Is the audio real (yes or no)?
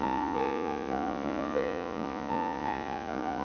no